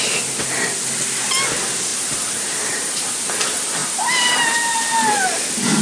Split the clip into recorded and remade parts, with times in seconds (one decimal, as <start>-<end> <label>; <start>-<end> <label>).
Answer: 0.0-1.9 recorded; 1.9-3.1 remade; 3.1-5.8 recorded